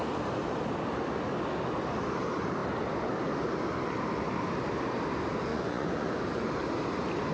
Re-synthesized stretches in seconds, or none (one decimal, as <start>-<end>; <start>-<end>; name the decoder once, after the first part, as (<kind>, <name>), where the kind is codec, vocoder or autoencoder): 5.5-6.1 (vocoder, Vocos)